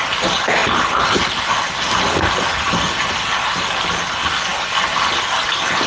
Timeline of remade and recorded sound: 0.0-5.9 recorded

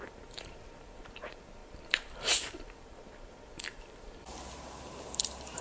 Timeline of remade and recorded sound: 0.0-5.6 remade